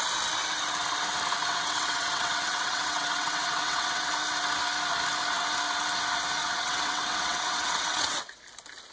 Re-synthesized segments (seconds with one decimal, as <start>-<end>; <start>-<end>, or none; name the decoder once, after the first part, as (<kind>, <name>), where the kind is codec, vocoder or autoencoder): 1.5-4.1 (vocoder, WaveNeXt); 6.4-8.4